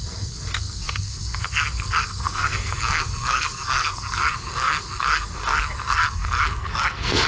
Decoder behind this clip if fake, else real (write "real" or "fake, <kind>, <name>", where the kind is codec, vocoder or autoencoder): fake, codec, SNAC